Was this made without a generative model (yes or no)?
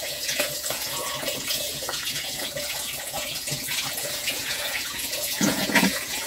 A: no